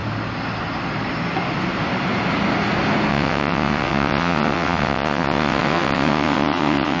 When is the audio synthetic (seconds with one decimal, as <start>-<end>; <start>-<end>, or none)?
3.1-7.0